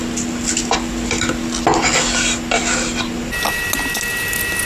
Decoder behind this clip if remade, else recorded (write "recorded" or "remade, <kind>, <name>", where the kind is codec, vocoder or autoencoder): recorded